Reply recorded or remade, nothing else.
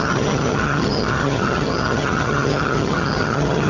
remade